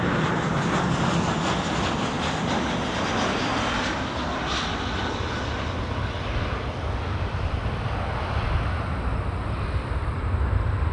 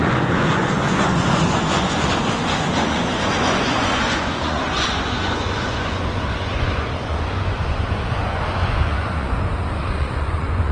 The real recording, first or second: first